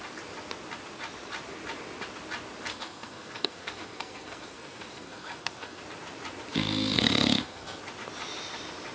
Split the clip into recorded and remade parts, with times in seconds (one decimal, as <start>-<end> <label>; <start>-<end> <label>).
0.0-2.7 recorded; 2.7-5.8 remade; 5.8-6.5 recorded; 6.5-7.8 remade; 7.8-8.9 recorded